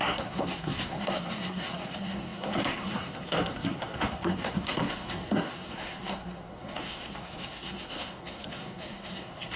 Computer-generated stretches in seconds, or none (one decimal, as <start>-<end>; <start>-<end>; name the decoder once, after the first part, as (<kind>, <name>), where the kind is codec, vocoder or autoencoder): 0.0-9.6 (codec, SNAC)